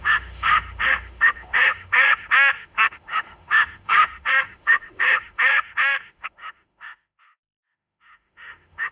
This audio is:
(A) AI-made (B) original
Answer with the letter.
A